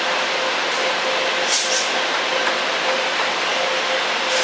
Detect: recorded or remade recorded